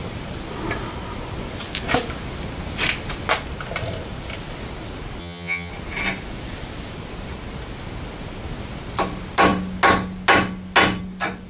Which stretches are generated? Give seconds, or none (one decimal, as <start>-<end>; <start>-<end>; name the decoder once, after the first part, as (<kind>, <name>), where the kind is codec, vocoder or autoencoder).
5.2-5.7 (vocoder, HiFi-GAN)